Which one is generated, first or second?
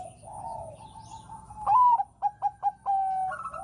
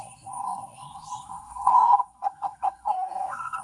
second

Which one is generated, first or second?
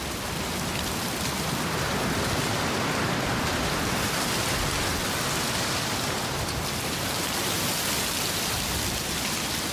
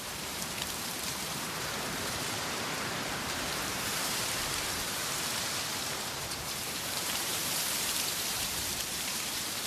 second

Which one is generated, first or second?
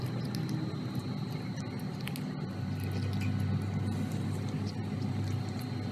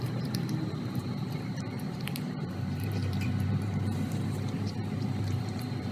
second